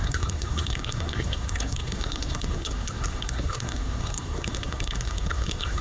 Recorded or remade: remade